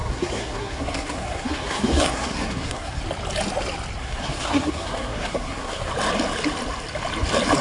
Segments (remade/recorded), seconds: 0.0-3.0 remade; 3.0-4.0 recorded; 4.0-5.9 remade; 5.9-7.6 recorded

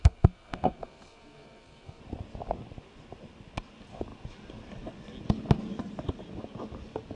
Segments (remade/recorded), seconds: 0.0-2.0 remade; 2.0-7.2 recorded

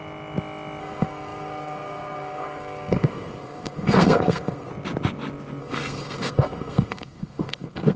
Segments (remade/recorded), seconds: 0.0-0.8 recorded; 0.8-4.7 remade; 4.7-5.6 recorded; 5.6-8.0 remade

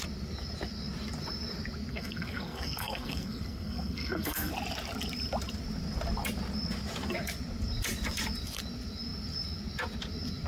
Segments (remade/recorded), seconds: 0.0-1.9 recorded; 1.9-4.5 remade; 4.5-10.5 recorded